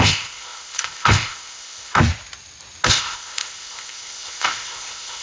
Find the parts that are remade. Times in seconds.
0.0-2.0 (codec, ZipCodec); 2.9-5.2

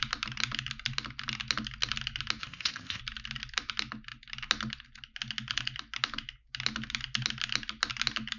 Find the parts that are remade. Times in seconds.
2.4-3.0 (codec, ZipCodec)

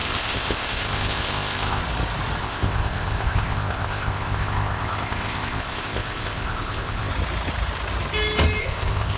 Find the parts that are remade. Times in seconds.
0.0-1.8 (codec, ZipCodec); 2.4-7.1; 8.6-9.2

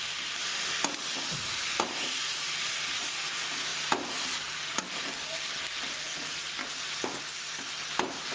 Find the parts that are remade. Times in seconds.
none

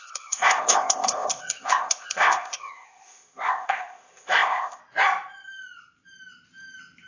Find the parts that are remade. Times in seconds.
0.0-4.8 (codec, ZipCodec)